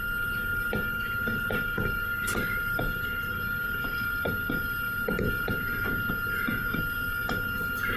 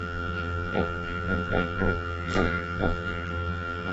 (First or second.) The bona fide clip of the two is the first